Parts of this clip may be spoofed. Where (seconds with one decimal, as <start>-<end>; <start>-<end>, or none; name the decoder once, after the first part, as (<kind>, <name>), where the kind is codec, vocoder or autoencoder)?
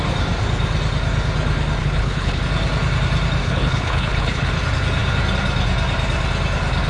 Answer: 1.8-2.4 (codec, HILCodec); 3.4-4.5